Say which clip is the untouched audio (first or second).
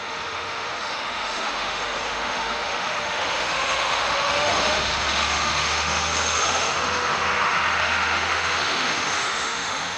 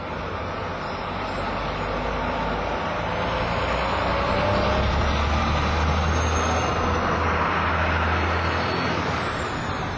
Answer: second